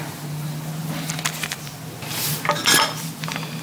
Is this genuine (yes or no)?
yes